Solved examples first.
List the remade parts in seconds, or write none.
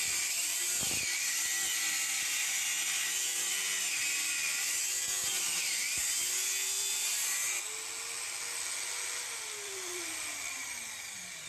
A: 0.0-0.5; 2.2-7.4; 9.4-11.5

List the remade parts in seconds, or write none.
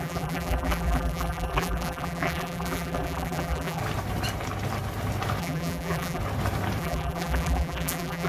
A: 0.0-3.8; 5.4-6.2; 6.8-8.3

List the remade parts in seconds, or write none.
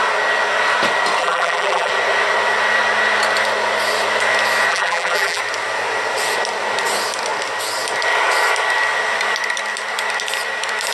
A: 1.2-1.9; 4.7-5.4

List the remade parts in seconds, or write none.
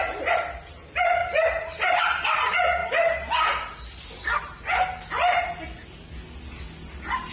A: 2.8-3.8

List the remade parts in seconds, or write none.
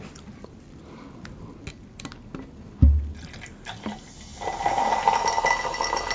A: 4.3-5.2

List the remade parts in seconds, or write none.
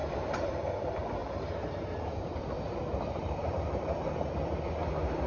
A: 0.0-0.5; 1.2-4.2